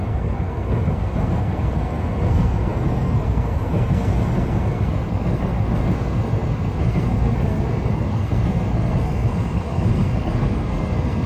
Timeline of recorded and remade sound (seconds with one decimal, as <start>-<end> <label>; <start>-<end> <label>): 0.0-11.3 remade